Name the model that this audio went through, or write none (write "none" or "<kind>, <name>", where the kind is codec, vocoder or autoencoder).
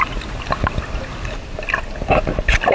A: none